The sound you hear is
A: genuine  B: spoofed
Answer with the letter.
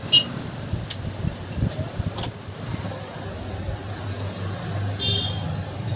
A